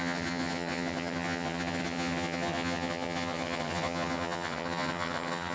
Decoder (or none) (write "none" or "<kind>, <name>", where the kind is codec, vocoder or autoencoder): vocoder, HiFi-GAN